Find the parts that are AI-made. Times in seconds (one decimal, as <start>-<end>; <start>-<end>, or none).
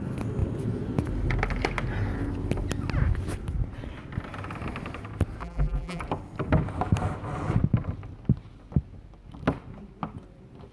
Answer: 5.4-6.0